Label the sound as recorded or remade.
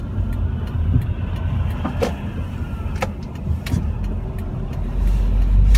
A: recorded